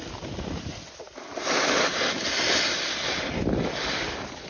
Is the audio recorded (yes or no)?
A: yes